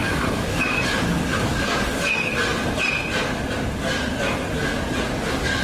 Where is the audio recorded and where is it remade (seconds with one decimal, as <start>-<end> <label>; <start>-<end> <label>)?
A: 0.0-2.5 remade; 2.5-5.0 recorded; 5.0-5.6 remade